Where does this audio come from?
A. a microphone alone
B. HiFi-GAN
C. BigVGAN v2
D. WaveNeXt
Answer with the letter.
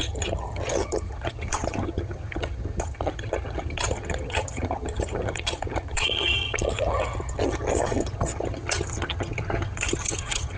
B